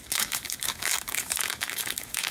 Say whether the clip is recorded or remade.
remade